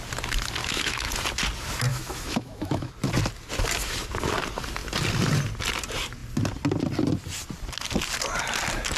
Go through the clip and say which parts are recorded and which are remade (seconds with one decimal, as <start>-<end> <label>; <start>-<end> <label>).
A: 0.0-0.6 recorded; 0.6-1.1 remade; 1.1-1.9 recorded; 1.9-2.9 remade; 2.9-9.0 recorded